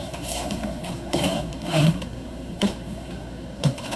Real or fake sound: fake